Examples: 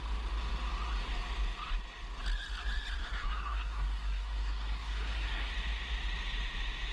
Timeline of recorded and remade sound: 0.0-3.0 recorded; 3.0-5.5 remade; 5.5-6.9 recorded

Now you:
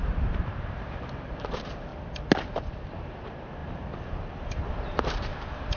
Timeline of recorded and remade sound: 0.0-1.9 remade; 1.9-2.5 recorded; 2.5-5.3 remade; 5.3-5.8 recorded